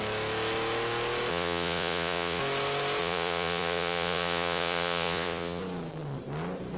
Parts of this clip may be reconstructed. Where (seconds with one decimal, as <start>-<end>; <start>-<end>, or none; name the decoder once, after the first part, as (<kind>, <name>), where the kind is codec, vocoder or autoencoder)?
1.3-2.4 (vocoder, Vocos); 3.0-5.6